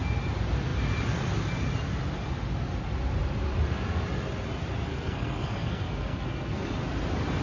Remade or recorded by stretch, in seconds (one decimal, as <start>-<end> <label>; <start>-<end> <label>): 0.0-4.9 recorded; 4.9-6.7 remade; 6.7-7.4 recorded